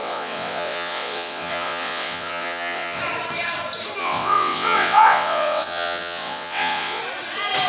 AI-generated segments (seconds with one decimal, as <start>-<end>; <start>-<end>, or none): 0.0-3.0; 4.0-7.0